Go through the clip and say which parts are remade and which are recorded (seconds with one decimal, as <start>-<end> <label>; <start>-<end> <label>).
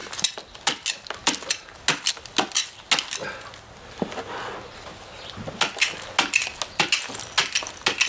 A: 0.0-8.1 recorded